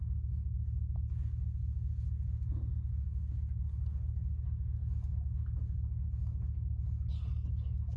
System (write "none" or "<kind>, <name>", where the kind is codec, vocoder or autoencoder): none